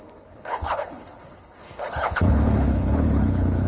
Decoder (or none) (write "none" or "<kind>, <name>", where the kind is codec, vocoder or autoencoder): codec, HILCodec